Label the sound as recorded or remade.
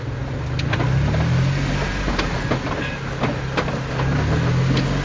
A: recorded